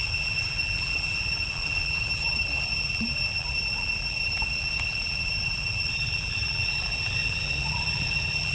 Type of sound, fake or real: fake